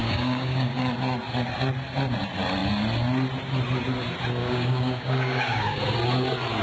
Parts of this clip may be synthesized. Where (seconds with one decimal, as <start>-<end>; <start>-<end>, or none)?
0.0-0.9; 4.4-5.8

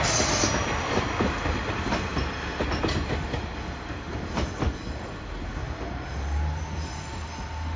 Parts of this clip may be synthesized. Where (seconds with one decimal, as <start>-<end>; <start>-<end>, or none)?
none

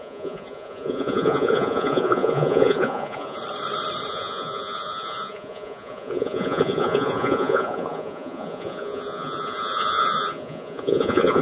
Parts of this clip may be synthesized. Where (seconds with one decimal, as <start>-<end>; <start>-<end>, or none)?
0.0-3.4; 4.1-11.4